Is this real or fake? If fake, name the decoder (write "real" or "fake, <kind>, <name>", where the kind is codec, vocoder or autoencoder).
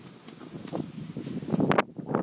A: real